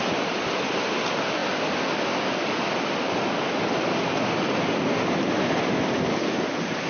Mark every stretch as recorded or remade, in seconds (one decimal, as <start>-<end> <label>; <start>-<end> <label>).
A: 0.0-6.9 recorded